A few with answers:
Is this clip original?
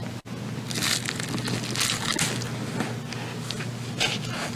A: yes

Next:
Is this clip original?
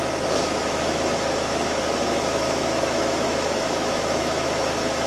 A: no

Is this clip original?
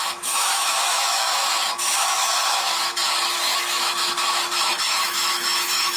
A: no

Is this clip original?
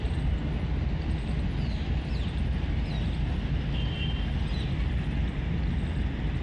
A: yes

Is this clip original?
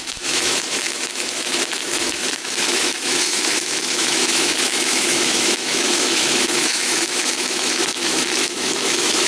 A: no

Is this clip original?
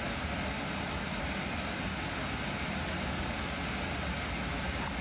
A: yes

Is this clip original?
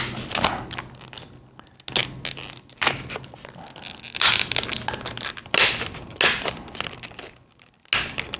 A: yes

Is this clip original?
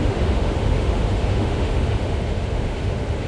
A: no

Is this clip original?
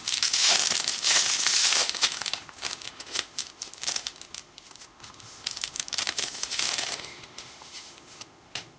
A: no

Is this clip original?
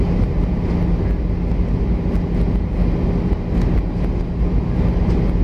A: yes